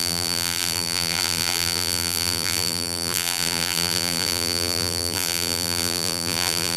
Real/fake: fake